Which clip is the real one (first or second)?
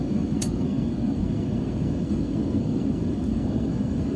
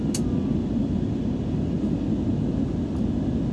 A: second